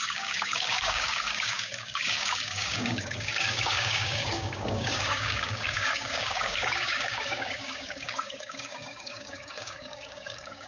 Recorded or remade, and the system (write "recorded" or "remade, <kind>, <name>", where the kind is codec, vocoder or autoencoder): remade, codec, DAC